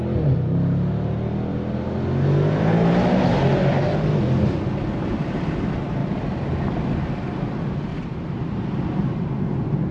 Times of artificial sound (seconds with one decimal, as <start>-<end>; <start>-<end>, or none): 6.0-6.9; 7.9-8.9

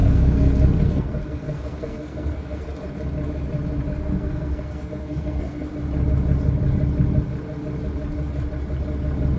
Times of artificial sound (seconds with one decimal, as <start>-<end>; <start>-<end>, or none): 0.0-2.7; 3.9-5.7

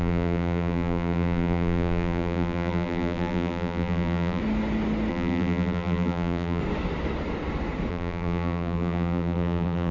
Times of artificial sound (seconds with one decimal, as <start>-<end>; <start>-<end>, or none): 0.0-4.4; 5.1-6.6; 7.9-9.9

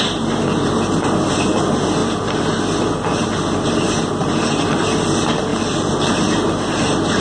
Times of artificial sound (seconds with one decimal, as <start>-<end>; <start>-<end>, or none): none

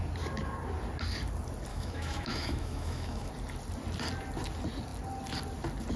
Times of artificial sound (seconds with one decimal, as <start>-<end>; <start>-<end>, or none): 1.7-3.3

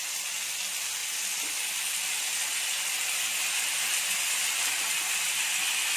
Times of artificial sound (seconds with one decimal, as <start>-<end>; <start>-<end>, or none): none

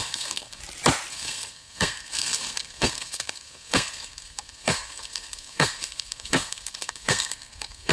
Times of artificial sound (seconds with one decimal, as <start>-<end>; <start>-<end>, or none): 0.0-0.6; 1.1-7.9